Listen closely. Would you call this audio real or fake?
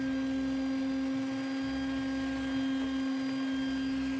real